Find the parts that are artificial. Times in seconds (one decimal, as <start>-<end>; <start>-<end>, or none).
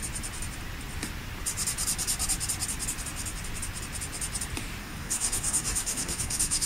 4.8-6.7